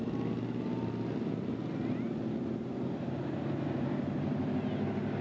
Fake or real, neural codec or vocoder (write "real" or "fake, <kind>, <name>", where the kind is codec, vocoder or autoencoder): real